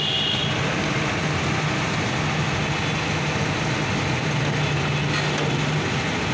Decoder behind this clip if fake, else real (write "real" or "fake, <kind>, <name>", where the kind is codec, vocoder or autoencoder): real